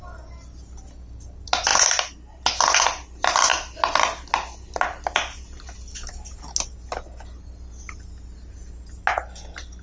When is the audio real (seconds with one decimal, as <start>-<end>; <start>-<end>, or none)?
0.0-9.8